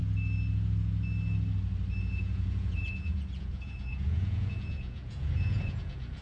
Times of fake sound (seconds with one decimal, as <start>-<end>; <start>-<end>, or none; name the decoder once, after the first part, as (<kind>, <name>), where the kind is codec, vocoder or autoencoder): 2.0-6.2 (vocoder, Vocos)